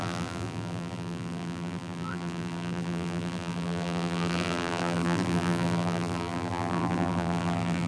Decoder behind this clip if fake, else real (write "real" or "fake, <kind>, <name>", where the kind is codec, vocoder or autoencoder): fake, vocoder, BigVGAN v2